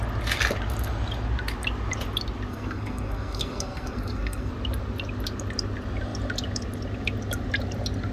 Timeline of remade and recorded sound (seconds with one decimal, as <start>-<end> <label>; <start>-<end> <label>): 0.0-2.5 recorded; 2.5-4.5 remade; 4.5-8.1 recorded